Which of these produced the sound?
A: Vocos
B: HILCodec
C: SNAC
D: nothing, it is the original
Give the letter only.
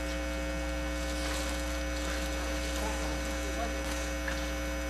D